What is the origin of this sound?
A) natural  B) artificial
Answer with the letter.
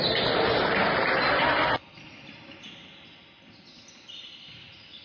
A